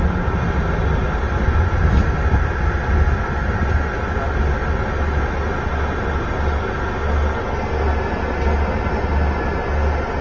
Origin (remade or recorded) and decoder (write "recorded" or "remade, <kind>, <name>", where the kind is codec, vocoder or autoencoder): recorded